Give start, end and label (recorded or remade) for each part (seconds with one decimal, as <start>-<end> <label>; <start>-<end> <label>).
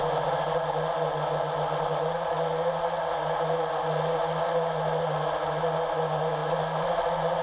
0.0-7.4 recorded